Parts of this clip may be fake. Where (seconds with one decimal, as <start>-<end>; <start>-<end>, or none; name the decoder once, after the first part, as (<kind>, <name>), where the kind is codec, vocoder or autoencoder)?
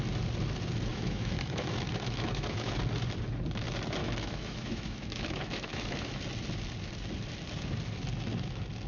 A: 0.9-2.8 (autoencoder, DAC-VAE); 4.0-6.2